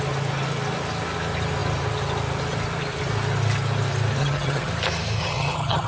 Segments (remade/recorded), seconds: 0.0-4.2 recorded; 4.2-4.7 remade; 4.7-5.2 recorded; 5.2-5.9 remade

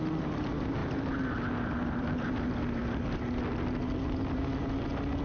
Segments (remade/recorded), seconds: 0.0-5.2 recorded

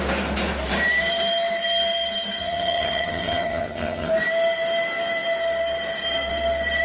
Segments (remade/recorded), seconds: 0.0-2.4 recorded; 2.4-4.1 remade; 4.1-6.8 recorded